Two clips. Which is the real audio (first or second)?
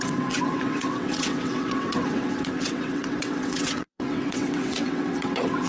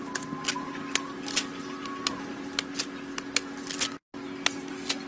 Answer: second